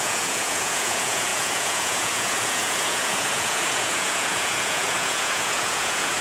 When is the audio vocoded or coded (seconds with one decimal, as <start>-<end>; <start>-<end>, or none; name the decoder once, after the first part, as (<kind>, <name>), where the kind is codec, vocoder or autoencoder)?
0.0-6.2 (vocoder, Vocos)